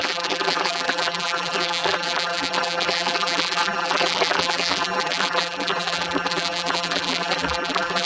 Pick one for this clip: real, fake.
fake